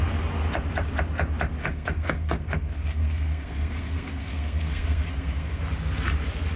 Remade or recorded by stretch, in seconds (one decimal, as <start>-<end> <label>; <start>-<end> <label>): 0.0-1.6 recorded; 1.6-5.6 remade; 5.6-6.6 recorded